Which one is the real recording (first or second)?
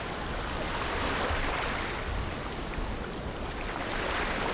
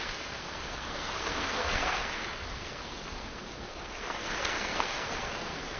first